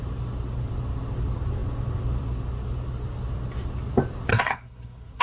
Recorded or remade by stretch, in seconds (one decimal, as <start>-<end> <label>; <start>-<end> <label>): 0.0-4.3 recorded; 4.3-5.2 remade